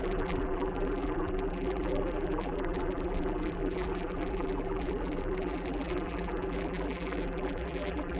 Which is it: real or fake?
fake